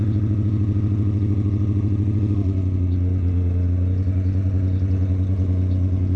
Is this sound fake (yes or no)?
no